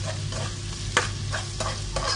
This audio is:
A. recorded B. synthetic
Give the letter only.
A